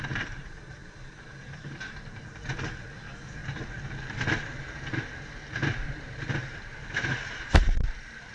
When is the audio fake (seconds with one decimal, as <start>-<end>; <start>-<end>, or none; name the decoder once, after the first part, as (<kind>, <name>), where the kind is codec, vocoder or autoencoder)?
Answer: 0.0-3.4 (vocoder, BigVGAN v2); 4.0-5.4; 6.0-8.3